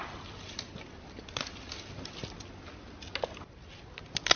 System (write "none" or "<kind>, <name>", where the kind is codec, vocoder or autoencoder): none